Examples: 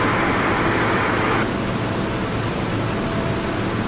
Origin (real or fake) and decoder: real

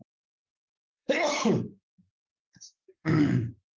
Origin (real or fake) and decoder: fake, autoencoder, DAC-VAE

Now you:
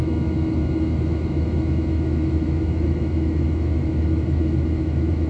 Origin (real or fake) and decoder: fake, autoencoder, DAC-VAE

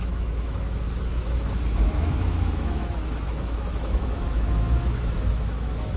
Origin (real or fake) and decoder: fake, autoencoder, DAC-VAE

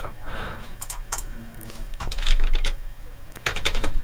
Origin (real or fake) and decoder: fake, autoencoder, DAC-VAE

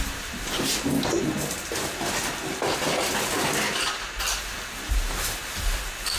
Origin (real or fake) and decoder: real